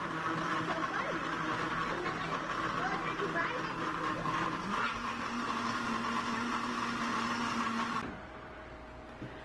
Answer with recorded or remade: recorded